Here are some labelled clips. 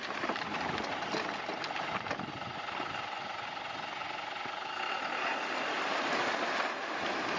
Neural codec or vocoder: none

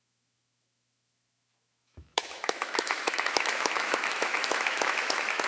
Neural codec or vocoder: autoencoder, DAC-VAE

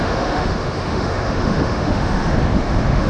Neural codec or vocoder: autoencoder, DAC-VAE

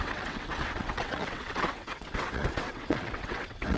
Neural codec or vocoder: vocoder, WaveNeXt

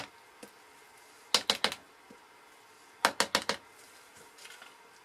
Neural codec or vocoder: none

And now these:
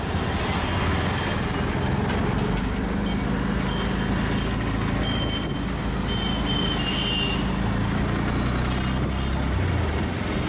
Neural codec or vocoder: none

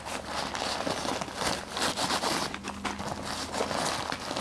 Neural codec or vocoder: none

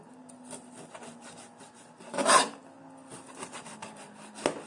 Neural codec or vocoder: none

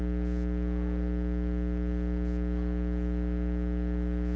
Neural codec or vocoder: none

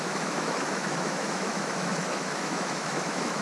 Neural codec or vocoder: autoencoder, DAC-VAE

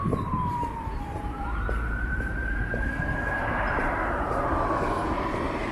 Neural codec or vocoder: vocoder, BigVGAN v2